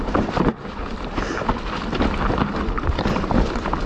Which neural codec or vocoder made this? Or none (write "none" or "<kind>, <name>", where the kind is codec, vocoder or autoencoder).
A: vocoder, BigVGAN v2